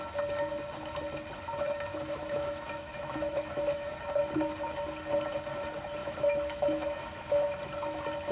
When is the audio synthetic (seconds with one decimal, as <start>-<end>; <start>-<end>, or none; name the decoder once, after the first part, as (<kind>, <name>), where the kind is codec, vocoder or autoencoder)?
1.9-4.0 (autoencoder, DAC-VAE); 6.0-7.6